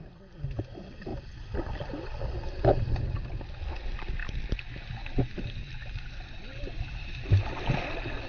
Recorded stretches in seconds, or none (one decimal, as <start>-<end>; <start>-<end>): 0.0-8.3